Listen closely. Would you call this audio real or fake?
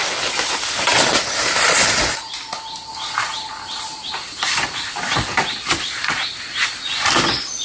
real